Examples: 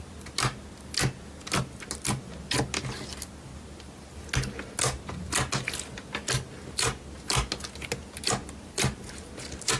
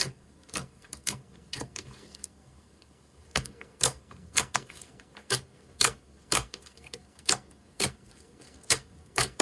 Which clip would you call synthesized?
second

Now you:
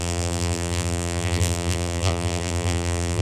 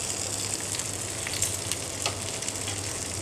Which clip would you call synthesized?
first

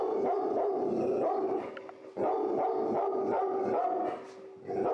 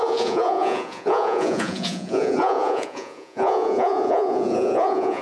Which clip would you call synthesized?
second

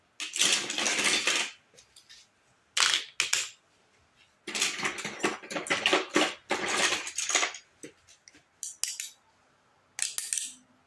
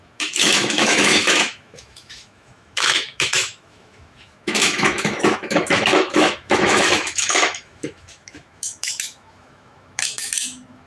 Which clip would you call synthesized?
second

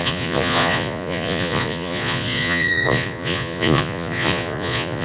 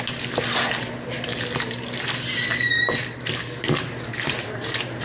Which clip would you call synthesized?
first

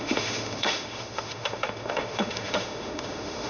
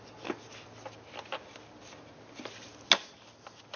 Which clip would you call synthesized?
first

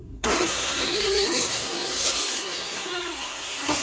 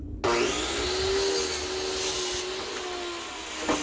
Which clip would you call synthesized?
first